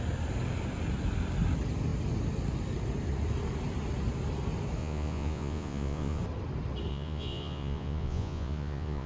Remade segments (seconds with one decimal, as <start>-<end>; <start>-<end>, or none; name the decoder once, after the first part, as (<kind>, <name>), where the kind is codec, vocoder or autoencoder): 4.8-6.2 (vocoder, Vocos); 6.9-9.1